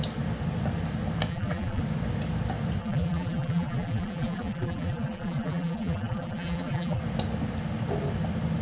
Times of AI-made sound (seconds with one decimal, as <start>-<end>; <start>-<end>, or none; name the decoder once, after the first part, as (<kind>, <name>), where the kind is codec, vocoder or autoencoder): 1.3-1.8 (vocoder, BigVGAN v2); 2.8-7.0